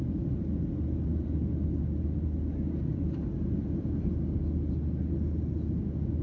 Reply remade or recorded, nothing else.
recorded